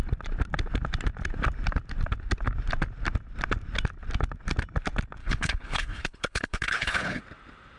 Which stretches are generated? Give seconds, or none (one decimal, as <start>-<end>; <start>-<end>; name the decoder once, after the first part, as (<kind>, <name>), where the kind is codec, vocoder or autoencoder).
5.2-7.2 (codec, HILCodec)